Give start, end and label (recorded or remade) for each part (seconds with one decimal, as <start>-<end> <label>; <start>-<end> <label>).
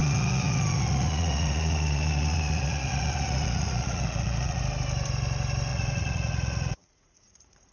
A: 0.0-4.6 remade; 4.6-5.7 recorded; 5.7-7.7 remade